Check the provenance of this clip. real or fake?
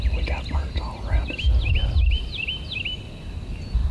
real